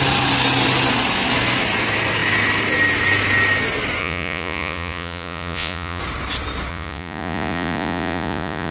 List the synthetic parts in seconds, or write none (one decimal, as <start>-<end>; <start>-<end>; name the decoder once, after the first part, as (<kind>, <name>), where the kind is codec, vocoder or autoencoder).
4.0-6.0 (vocoder, Vocos); 6.7-8.7

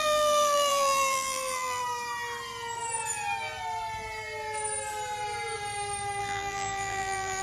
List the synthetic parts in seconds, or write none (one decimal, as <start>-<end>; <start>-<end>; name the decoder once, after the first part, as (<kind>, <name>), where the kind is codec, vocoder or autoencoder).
0.0-1.8 (vocoder, BigVGAN v2); 6.2-7.4